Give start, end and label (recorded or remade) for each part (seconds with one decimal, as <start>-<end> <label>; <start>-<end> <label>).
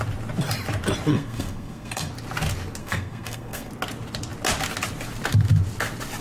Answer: 0.0-1.1 recorded; 1.1-2.1 remade; 2.1-2.8 recorded; 2.8-3.7 remade; 3.7-6.2 recorded